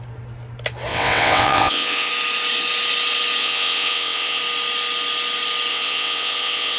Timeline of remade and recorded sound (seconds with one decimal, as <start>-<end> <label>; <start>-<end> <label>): 0.0-0.9 recorded; 0.9-2.1 remade; 2.1-3.4 recorded; 3.4-4.4 remade; 4.4-5.7 recorded; 5.7-6.8 remade